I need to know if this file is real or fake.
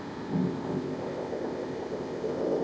fake